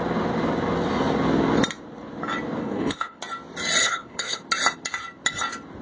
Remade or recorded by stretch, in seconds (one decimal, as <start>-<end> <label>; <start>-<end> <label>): 0.0-2.6 recorded; 2.6-3.2 remade; 3.2-3.8 recorded; 3.8-4.4 remade; 4.4-5.8 recorded